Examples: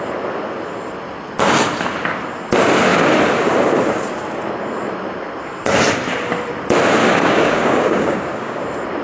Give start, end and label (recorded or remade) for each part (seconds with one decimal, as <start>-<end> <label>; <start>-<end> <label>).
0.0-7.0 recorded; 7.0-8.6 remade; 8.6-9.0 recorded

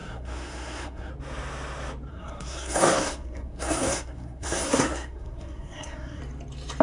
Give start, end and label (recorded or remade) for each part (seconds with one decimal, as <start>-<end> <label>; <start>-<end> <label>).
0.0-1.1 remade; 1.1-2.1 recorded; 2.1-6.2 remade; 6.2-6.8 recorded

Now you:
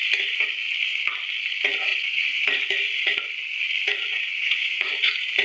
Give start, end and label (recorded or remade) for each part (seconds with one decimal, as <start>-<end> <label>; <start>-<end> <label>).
0.0-1.9 recorded; 1.9-2.4 remade; 2.4-4.1 recorded; 4.1-4.9 remade; 4.9-5.4 recorded

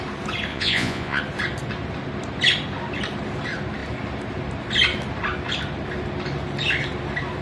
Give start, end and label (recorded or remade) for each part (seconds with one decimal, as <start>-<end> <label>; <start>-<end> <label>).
0.0-0.5 recorded; 0.5-1.2 remade; 1.2-7.4 recorded

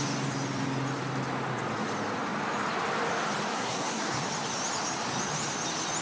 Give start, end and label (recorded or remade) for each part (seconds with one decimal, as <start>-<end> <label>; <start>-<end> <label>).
0.0-3.5 recorded; 3.5-4.2 remade; 4.2-6.0 recorded

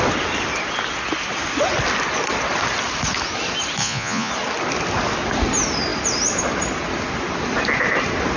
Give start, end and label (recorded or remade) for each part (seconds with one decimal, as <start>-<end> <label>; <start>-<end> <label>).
0.0-3.8 recorded; 3.8-4.3 remade; 4.3-8.4 recorded

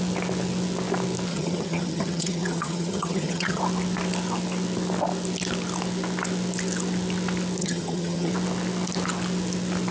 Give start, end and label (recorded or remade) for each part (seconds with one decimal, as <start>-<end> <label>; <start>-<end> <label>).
0.0-1.3 recorded; 1.3-3.6 remade; 3.6-7.6 recorded; 7.6-8.3 remade; 8.3-9.9 recorded

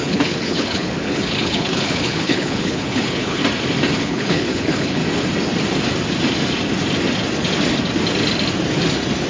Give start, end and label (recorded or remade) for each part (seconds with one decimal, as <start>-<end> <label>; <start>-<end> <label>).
0.0-3.4 remade; 3.4-4.0 recorded; 4.0-5.0 remade; 5.0-9.3 recorded